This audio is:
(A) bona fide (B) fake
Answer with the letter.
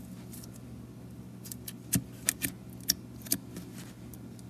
A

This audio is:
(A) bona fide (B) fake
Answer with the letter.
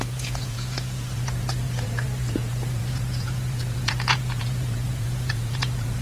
B